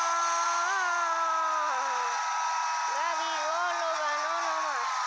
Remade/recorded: recorded